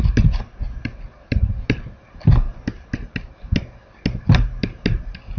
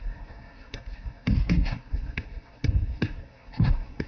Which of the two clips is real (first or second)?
first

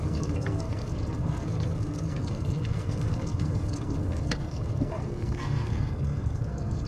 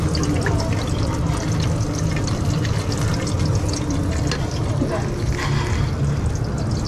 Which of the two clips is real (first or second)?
second